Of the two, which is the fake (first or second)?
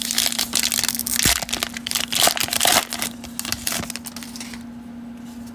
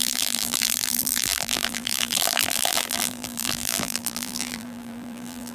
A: second